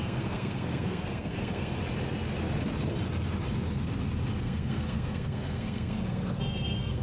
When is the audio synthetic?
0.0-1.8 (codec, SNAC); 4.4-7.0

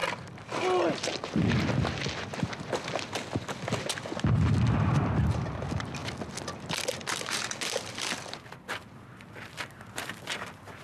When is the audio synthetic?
4.2-6.0 (vocoder, BigVGAN v2); 8.5-10.8

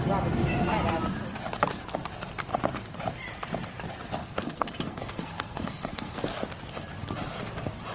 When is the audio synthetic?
4.2-6.2 (codec, SNAC)

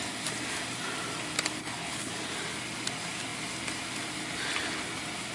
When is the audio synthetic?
1.6-2.1 (codec, HILCodec)